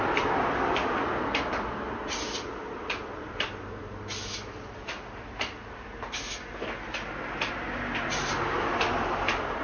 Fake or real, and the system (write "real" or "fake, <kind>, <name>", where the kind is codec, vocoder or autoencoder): real